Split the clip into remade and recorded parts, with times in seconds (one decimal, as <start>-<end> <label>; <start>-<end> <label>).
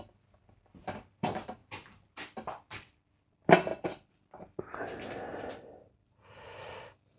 0.0-1.6 remade; 1.6-3.1 recorded; 3.1-7.2 remade